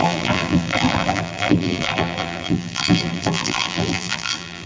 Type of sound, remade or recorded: remade